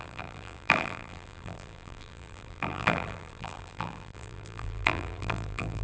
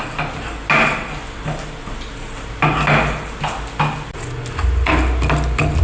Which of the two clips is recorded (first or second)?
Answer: second